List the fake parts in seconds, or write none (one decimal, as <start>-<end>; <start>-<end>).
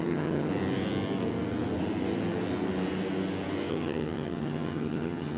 0.0-0.5; 3.7-5.4